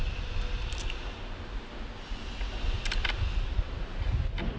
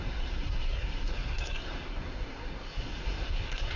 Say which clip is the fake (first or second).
second